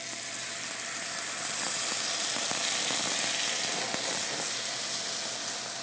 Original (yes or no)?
yes